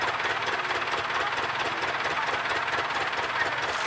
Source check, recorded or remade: recorded